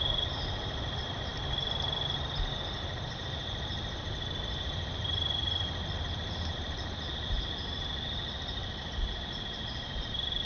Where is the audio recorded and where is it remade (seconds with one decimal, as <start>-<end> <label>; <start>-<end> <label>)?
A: 0.0-10.5 recorded